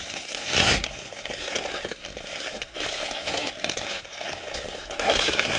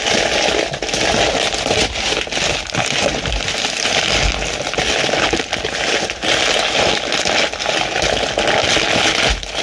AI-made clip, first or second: first